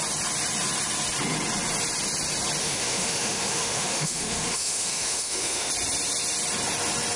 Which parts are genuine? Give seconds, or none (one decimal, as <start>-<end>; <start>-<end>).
0.0-2.6; 5.7-7.2